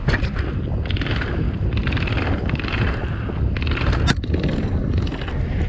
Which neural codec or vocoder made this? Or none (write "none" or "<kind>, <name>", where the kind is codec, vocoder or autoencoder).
none